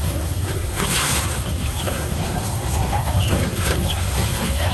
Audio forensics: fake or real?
fake